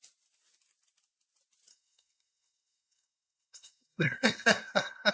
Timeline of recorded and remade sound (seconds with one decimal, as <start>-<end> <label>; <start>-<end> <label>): 0.0-1.7 recorded; 1.7-5.1 remade